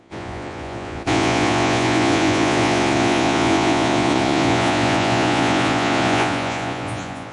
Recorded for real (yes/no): no